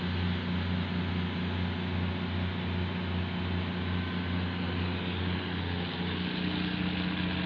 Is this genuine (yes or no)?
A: yes